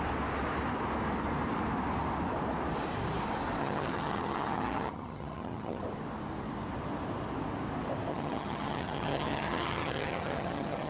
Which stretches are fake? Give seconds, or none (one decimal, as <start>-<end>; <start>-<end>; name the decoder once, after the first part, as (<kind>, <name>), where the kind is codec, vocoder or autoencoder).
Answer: 3.6-5.8 (vocoder, HiFi-GAN); 8.1-10.9